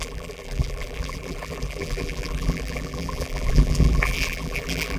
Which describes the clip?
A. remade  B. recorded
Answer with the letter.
A